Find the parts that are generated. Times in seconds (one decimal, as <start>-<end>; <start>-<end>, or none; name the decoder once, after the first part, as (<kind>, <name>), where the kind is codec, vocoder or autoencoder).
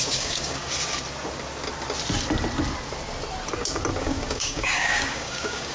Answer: 0.0-0.6 (codec, DAC); 4.0-5.7